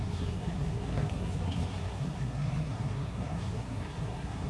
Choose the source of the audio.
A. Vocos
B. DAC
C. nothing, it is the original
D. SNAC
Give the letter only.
D